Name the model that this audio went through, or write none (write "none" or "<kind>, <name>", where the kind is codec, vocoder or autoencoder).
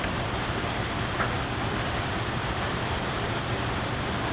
vocoder, BigVGAN v2